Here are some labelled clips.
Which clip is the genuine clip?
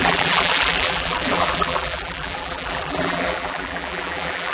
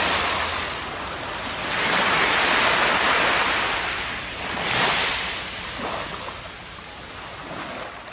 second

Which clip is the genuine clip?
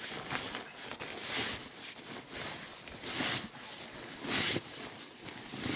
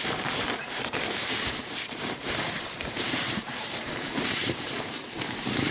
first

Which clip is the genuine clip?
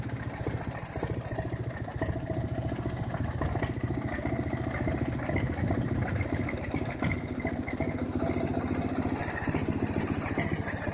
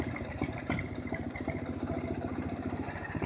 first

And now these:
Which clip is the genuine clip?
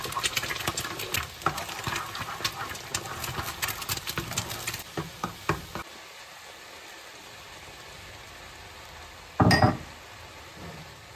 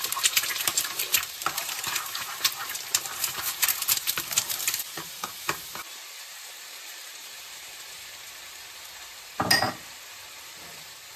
first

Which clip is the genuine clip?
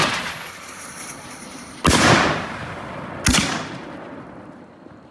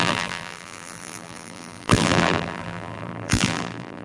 first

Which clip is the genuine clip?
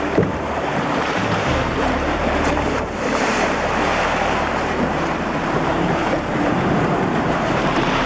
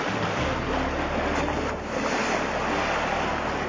second